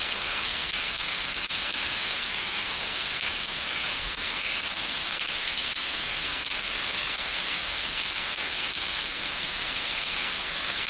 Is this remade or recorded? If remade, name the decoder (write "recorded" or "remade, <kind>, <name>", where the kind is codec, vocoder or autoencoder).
remade, codec, SNAC